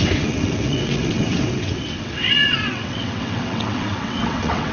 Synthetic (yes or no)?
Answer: yes